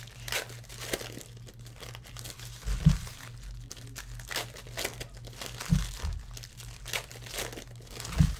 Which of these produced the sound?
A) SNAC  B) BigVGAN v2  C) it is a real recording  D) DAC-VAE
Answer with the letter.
C